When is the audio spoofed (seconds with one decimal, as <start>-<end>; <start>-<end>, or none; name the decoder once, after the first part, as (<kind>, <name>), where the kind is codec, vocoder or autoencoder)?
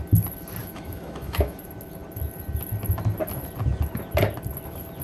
0.6-1.6 (autoencoder, DAC-VAE)